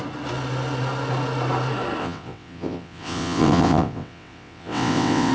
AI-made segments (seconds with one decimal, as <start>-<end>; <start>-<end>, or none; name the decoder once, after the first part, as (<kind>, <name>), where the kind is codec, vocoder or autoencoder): 2.0-5.3 (vocoder, WaveNeXt)